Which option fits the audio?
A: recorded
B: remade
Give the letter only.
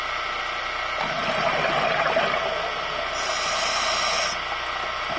A